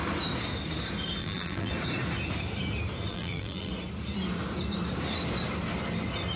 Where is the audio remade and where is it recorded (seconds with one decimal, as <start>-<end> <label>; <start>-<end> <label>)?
0.0-1.2 recorded; 1.2-1.7 remade; 1.7-3.1 recorded; 3.1-3.7 remade; 3.7-6.4 recorded